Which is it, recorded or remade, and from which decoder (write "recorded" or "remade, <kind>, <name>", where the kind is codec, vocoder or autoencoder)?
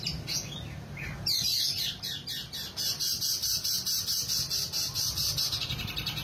recorded